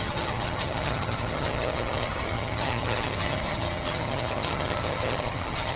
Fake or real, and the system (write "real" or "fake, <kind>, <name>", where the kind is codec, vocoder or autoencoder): fake, vocoder, HiFi-GAN